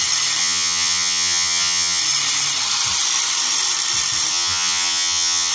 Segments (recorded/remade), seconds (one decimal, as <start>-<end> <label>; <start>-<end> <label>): 0.0-0.4 recorded; 0.4-2.0 remade; 2.0-4.3 recorded; 4.3-5.5 remade